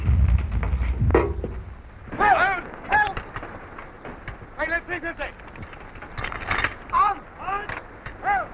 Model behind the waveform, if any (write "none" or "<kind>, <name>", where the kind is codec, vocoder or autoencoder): none